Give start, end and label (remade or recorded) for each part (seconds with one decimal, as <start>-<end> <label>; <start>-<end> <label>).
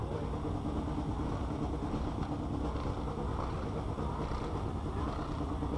0.0-5.8 recorded